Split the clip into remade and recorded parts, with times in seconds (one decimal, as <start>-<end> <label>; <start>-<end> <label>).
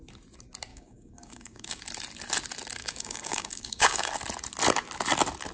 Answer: 0.0-0.7 recorded; 0.7-1.8 remade; 1.8-2.8 recorded; 2.8-4.1 remade; 4.1-5.5 recorded